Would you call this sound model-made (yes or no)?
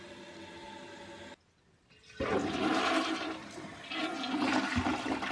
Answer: no